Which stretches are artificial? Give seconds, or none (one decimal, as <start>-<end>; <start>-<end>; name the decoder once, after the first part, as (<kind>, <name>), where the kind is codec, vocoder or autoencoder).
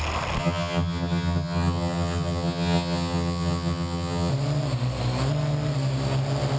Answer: 0.4-4.3 (vocoder, HiFi-GAN)